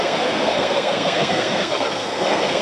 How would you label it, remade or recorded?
remade